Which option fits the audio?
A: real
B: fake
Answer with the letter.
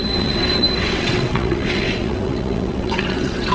B